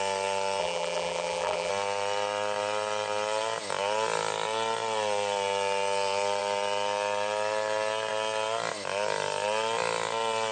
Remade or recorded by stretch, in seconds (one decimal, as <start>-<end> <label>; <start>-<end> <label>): 0.0-0.6 recorded; 0.6-1.7 remade; 1.7-10.5 recorded